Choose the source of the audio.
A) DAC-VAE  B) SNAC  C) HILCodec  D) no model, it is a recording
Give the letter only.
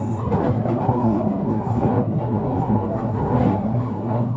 B